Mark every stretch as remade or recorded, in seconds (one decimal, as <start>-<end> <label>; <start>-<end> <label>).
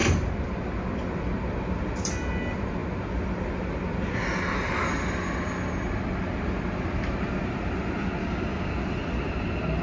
0.0-8.2 recorded; 8.2-8.7 remade; 8.7-9.8 recorded